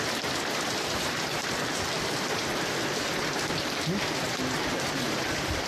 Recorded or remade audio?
remade